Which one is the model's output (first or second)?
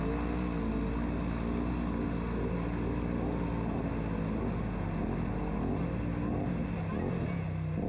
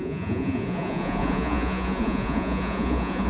second